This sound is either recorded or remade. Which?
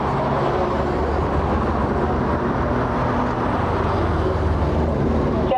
recorded